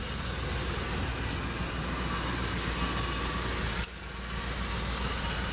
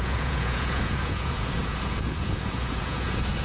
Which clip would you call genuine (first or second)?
first